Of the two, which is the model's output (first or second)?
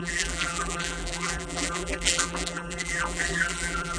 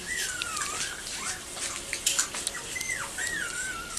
first